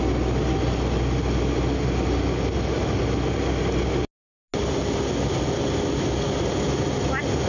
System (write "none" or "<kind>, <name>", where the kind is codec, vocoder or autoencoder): none